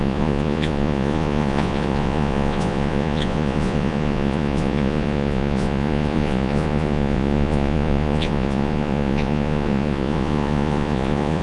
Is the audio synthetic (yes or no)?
yes